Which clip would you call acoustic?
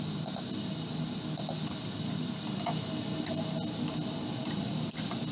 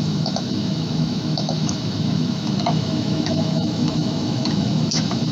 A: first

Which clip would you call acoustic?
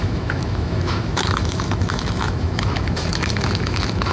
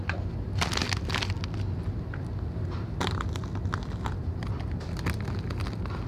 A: second